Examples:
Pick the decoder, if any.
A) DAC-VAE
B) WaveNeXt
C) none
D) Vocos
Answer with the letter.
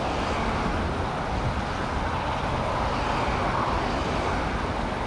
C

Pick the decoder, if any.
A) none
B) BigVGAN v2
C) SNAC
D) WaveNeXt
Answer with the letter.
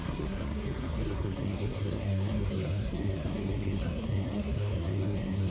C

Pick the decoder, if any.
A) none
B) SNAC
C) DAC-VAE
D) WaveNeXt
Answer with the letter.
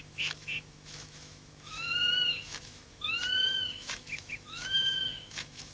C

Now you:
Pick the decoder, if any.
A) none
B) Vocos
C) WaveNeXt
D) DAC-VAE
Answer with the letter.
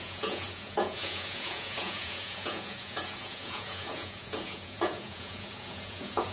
B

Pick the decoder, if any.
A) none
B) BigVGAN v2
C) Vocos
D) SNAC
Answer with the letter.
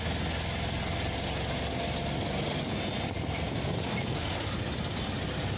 A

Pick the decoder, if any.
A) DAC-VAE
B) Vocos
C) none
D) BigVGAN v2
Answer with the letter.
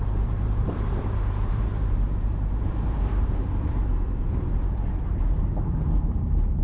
D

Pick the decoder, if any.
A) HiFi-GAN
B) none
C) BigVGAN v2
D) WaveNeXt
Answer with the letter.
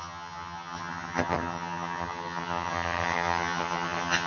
A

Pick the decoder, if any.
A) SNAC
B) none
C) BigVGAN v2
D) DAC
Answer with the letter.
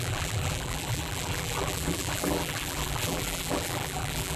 C